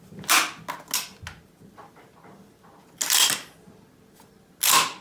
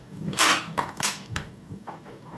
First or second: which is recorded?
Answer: first